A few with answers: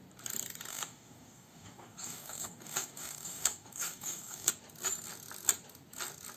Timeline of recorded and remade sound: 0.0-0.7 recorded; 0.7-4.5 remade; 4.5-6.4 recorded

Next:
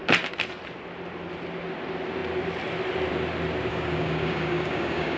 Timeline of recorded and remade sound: 0.0-3.7 recorded; 3.7-5.2 remade

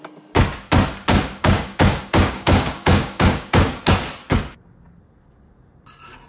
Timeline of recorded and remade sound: 0.0-1.1 recorded; 1.1-3.8 remade; 3.8-6.3 recorded

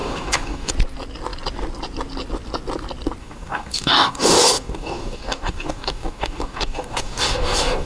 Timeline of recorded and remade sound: 0.0-0.7 remade; 0.7-3.2 recorded; 3.2-7.9 remade

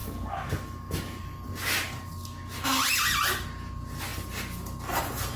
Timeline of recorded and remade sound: 0.0-1.2 remade; 1.2-5.4 recorded

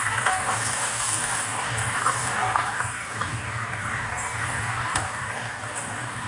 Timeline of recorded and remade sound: 0.0-6.3 remade